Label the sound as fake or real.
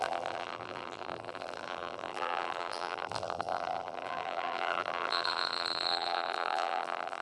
fake